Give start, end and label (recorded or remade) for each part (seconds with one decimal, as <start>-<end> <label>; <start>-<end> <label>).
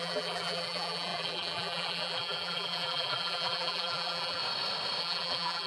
0.0-4.4 remade; 4.4-5.0 recorded; 5.0-5.7 remade